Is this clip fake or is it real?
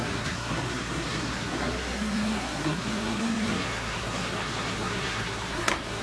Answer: fake